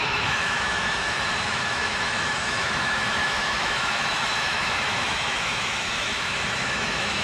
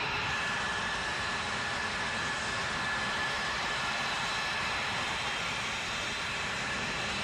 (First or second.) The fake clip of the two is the first